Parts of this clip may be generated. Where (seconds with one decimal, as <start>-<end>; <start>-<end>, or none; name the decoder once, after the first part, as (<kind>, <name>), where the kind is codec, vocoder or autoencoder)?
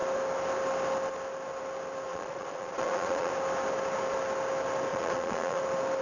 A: 2.1-3.3 (vocoder, Vocos); 4.9-5.6